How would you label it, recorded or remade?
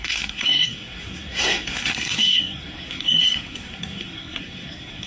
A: remade